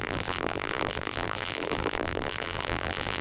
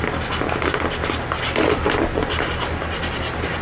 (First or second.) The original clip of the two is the second